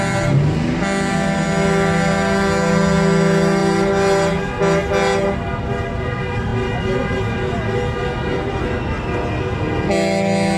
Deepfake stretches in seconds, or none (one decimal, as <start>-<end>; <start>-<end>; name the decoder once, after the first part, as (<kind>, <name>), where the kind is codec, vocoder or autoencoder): none